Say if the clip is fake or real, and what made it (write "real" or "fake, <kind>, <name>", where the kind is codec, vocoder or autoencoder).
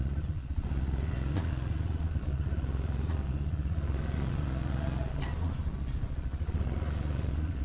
fake, vocoder, Vocos